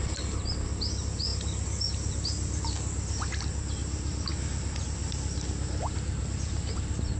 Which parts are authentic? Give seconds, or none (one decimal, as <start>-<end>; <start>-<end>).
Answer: 0.0-7.2